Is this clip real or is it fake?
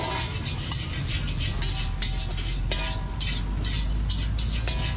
real